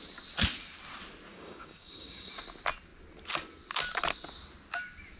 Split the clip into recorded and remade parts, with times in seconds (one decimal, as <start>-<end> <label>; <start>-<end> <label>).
0.0-1.3 recorded; 1.3-2.3 remade; 2.3-5.2 recorded